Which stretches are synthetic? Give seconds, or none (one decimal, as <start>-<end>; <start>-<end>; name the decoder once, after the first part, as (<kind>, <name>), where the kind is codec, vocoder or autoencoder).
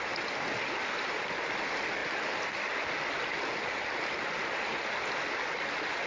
none